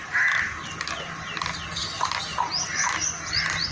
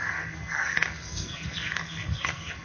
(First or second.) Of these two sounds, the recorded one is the first